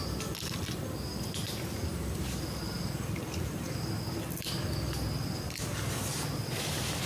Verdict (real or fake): real